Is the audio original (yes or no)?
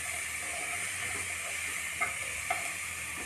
yes